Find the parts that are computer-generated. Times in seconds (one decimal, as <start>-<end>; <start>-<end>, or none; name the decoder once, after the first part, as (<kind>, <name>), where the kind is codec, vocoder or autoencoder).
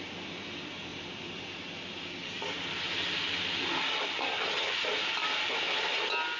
none